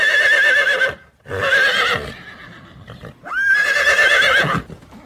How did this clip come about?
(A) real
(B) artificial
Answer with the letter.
A